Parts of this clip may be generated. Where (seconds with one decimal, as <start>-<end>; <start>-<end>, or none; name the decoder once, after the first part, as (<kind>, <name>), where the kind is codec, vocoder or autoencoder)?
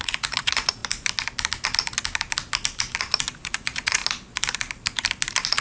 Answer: 0.0-0.8 (vocoder, Vocos); 3.4-4.0